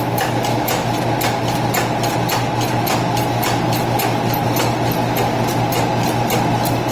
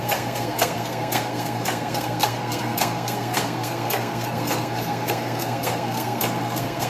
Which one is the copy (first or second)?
second